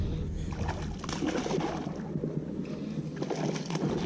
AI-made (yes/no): no